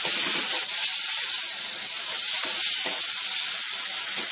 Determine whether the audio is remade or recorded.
recorded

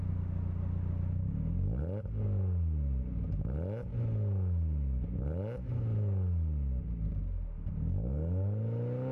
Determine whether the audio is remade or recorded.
recorded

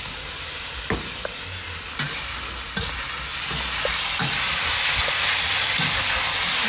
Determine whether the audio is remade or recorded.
recorded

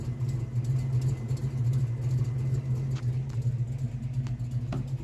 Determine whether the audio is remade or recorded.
recorded